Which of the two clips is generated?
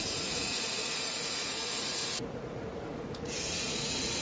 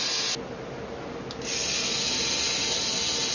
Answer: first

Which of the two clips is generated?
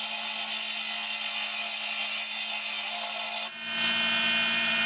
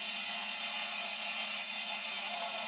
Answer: second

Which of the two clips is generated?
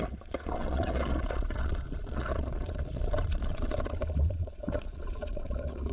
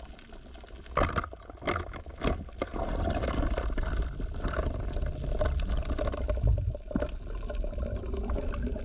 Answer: first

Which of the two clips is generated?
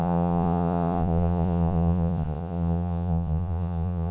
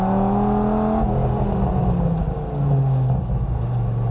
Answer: first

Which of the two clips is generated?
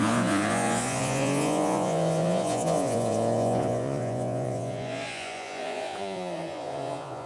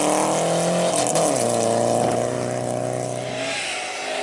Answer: first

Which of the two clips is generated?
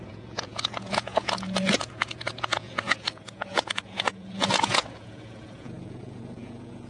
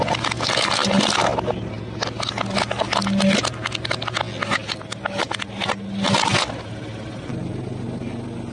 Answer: first